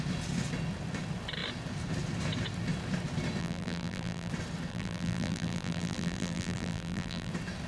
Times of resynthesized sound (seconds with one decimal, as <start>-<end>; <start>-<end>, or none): 3.4-4.3; 4.7-7.3